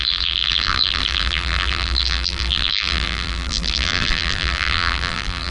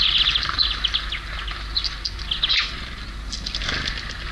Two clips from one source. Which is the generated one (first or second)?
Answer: first